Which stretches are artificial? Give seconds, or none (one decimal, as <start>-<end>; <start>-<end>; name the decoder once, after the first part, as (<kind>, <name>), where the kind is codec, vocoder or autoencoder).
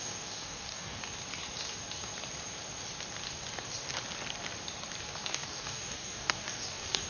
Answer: 0.0-1.0 (codec, DAC); 5.3-7.1